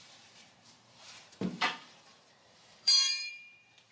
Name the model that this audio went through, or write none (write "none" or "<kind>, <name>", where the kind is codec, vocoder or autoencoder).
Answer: vocoder, BigVGAN v2